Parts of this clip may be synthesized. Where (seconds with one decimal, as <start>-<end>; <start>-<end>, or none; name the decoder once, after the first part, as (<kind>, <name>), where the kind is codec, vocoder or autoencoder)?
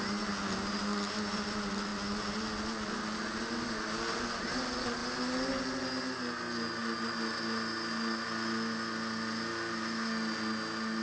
none